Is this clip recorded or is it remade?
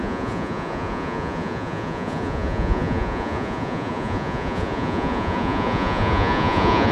remade